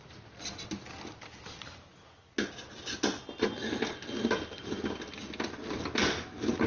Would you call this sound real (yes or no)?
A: yes